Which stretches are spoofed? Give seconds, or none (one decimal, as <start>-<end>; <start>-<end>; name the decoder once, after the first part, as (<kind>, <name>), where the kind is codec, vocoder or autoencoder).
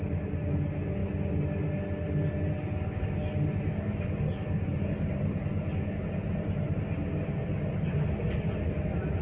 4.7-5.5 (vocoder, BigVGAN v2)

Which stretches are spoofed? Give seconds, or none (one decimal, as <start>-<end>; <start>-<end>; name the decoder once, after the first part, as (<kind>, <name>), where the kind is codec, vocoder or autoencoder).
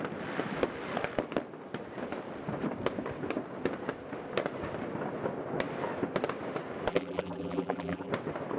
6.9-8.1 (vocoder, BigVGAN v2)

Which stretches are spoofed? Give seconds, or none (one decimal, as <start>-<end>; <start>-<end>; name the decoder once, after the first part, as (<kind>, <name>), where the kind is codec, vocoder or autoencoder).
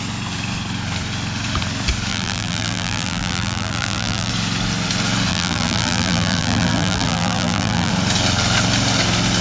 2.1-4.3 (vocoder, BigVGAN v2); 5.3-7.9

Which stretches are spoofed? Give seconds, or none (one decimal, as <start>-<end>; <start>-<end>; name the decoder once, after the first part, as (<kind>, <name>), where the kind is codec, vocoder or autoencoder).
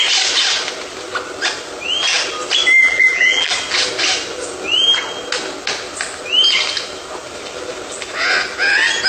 2.8-3.5 (vocoder, BigVGAN v2)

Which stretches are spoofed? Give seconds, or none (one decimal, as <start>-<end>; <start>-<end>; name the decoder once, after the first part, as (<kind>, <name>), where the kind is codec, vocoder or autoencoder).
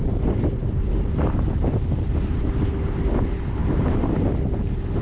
3.6-4.3 (vocoder, BigVGAN v2)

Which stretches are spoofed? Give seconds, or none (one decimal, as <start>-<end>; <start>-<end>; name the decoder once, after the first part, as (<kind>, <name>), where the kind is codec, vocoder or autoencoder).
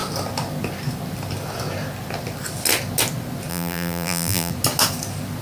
3.5-4.5 (vocoder, BigVGAN v2)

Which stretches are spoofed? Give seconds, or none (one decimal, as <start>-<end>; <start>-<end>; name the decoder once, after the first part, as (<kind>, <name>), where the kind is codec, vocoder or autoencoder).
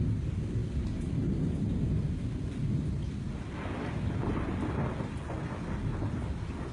none